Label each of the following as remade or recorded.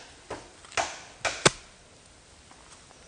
recorded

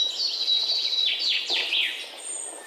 recorded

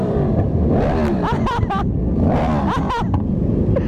recorded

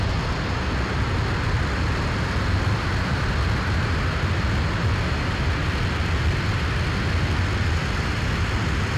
recorded